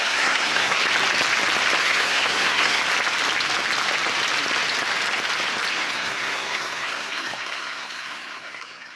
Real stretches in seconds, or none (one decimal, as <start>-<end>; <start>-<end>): 0.8-1.8; 2.8-5.7